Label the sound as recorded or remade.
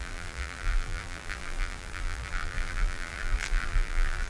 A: remade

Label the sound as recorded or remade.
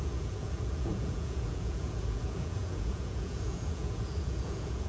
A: remade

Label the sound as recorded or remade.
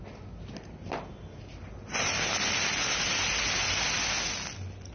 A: recorded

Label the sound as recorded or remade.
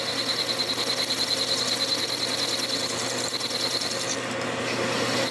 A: recorded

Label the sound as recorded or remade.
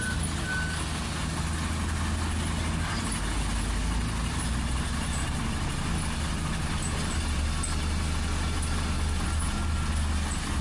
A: recorded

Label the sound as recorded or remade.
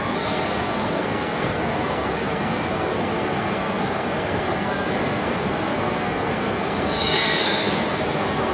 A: remade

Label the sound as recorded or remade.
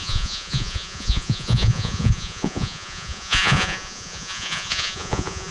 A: remade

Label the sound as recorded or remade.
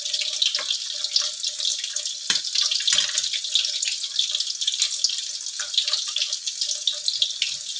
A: recorded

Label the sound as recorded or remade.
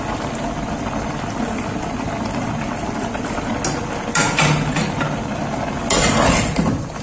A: recorded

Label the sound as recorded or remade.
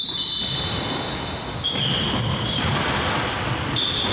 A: recorded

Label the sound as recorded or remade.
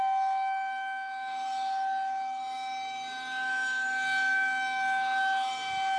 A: remade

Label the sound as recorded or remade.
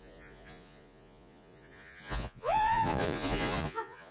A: remade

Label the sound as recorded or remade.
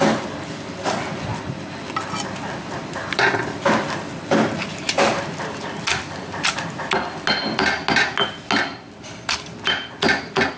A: recorded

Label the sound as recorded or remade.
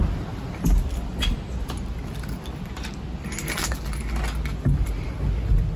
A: recorded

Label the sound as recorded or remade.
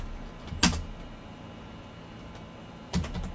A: recorded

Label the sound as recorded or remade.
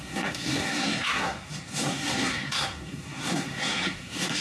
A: remade